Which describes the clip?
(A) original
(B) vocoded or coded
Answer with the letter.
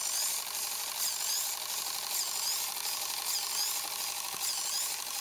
A